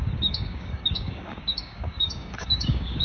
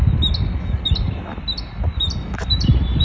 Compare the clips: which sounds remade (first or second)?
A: first